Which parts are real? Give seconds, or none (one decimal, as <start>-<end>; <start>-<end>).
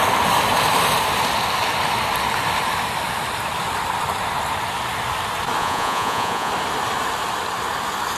0.0-5.6; 6.5-8.2